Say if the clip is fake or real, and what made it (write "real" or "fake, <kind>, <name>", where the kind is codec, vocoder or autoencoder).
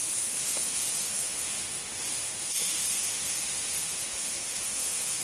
fake, autoencoder, DAC-VAE